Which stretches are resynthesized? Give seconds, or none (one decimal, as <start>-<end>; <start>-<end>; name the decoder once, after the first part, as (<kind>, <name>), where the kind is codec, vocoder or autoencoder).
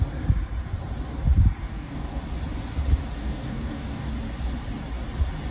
1.6-2.2 (codec, DAC); 3.2-4.1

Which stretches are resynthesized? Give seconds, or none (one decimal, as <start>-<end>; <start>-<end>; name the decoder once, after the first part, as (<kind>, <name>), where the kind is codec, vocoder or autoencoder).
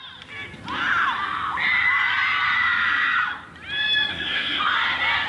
4.1-4.6 (codec, SNAC)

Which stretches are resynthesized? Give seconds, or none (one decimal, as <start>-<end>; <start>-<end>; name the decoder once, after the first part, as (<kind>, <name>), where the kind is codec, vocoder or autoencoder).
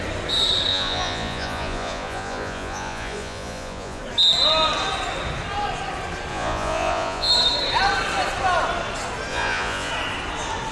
0.7-4.0 (vocoder, Vocos); 6.3-7.3; 9.3-9.9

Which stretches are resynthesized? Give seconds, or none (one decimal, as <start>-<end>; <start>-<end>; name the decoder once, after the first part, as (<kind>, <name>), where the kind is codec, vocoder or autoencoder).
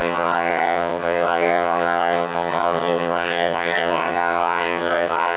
0.0-5.4 (vocoder, HiFi-GAN)